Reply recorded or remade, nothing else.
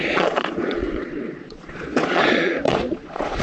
remade